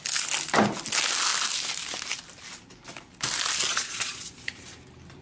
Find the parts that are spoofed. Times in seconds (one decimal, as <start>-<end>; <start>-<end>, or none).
3.7-4.3